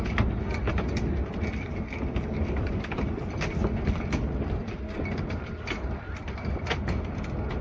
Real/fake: real